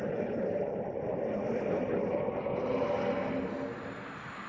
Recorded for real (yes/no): yes